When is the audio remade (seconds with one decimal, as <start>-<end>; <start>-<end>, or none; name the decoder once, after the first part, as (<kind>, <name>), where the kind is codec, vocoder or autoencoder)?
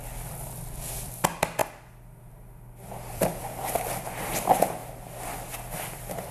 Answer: 0.0-1.6 (vocoder, BigVGAN v2); 3.1-4.8; 5.8-6.3